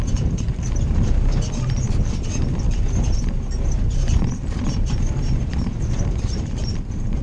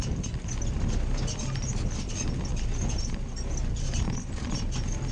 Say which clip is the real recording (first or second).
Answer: second